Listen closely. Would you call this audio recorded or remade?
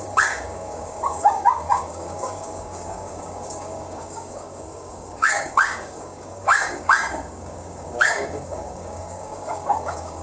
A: remade